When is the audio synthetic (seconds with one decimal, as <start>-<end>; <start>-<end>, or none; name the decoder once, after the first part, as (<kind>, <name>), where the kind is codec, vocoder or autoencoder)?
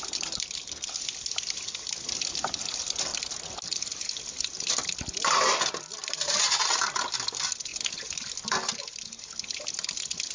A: none